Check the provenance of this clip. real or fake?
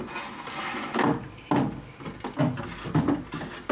real